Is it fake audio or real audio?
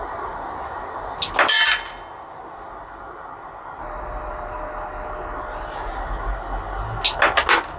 real